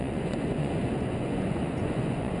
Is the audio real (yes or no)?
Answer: no